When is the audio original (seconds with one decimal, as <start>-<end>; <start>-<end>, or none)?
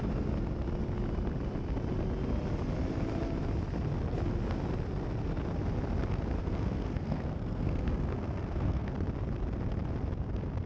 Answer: 0.0-6.4; 8.9-10.7